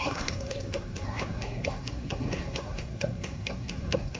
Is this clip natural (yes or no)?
no